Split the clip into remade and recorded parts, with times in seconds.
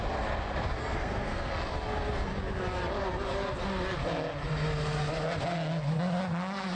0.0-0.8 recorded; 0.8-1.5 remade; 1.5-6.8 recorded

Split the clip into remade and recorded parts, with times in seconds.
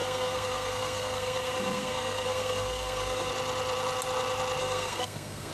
0.0-3.3 remade; 3.3-4.6 recorded; 4.6-5.5 remade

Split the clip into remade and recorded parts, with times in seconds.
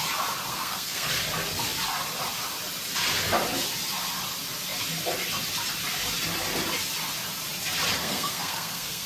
0.0-0.5 recorded; 0.5-1.2 remade; 1.2-8.0 recorded; 8.0-9.1 remade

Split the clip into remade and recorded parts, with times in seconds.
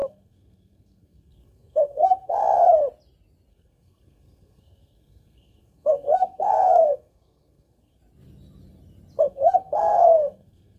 0.0-2.4 remade; 2.4-3.5 recorded; 3.5-8.0 remade; 8.0-9.2 recorded; 9.2-10.8 remade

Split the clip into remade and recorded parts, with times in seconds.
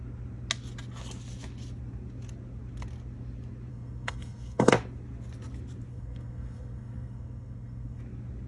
0.0-3.7 recorded; 3.7-4.7 remade; 4.7-5.9 recorded; 5.9-8.0 remade; 8.0-8.5 recorded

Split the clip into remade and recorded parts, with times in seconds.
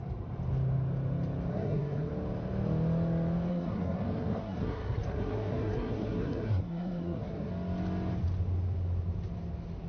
0.0-1.5 recorded; 1.5-2.1 remade; 2.1-3.5 recorded; 3.5-7.5 remade; 7.5-9.9 recorded